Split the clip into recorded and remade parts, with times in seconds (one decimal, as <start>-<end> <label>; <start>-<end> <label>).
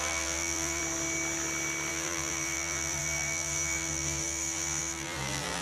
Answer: 0.0-0.8 remade; 0.8-1.9 recorded; 1.9-5.6 remade